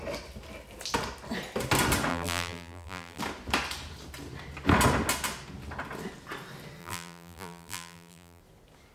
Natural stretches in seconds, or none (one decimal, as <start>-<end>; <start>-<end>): 0.0-2.1; 3.2-6.8; 8.4-8.9